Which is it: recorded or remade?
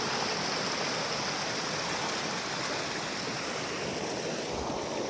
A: recorded